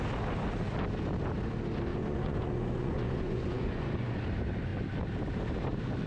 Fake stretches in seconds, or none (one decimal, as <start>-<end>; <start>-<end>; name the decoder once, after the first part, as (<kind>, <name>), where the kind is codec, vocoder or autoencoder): 1.9-4.2 (vocoder, Vocos)